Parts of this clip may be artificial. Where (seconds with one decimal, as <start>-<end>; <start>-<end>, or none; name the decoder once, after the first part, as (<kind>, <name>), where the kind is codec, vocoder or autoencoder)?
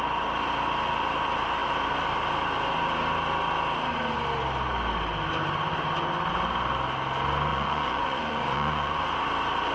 7.5-9.0 (vocoder, Vocos)